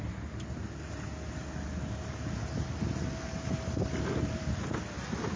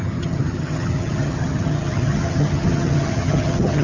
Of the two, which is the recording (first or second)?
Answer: first